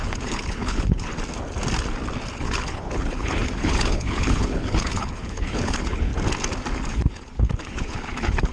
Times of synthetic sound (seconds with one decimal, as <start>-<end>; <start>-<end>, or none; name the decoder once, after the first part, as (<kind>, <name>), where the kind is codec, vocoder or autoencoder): 0.0-1.1 (codec, HILCodec); 2.3-6.1; 6.9-8.5